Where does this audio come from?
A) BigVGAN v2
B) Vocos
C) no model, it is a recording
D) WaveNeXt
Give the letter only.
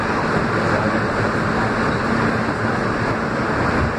C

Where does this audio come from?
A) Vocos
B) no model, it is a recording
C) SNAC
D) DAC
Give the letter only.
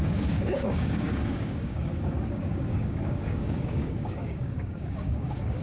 D